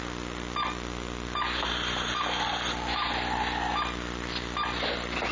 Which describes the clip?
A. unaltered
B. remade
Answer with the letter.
A